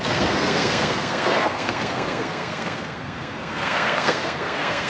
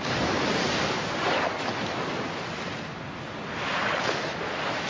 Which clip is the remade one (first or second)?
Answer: first